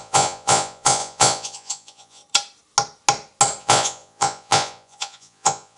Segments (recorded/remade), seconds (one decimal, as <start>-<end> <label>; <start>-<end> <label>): 0.0-2.2 remade; 2.2-3.6 recorded; 3.6-5.8 remade